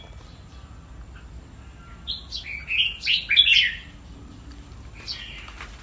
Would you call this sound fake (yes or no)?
no